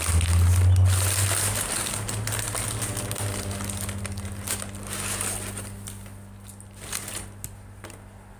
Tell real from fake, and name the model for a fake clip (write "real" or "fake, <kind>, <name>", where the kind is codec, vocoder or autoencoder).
real